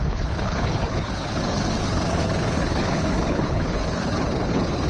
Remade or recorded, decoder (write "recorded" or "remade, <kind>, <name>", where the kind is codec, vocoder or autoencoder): remade, codec, HILCodec